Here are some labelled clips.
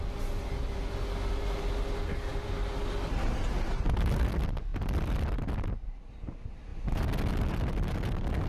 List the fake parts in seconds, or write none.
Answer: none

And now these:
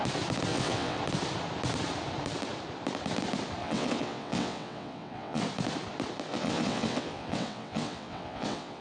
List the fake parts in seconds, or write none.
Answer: 0.5-1.0 (vocoder, WaveNeXt); 3.6-5.4; 6.3-8.8

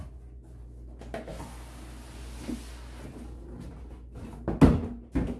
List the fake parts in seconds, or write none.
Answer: none

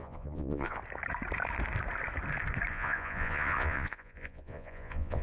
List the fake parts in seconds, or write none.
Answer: 0.0-0.8 (vocoder, Vocos); 2.7-5.2

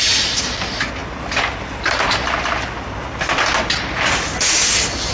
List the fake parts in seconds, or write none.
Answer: none

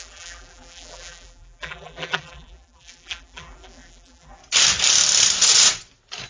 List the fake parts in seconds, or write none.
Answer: 0.0-4.4 (vocoder, BigVGAN v2)